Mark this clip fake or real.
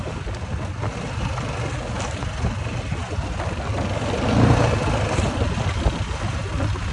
real